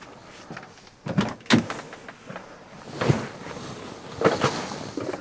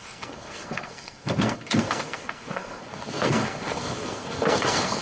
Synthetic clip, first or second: second